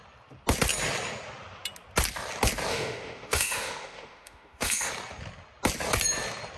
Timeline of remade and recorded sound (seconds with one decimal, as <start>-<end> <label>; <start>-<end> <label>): 0.0-2.7 recorded; 2.7-4.9 remade; 4.9-6.6 recorded